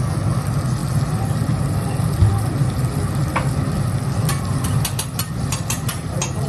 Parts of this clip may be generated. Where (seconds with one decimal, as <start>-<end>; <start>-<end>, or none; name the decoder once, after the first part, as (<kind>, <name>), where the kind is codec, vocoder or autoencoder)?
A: none